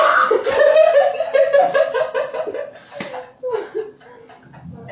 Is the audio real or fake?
real